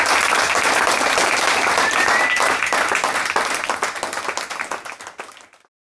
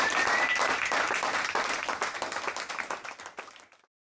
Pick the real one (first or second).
first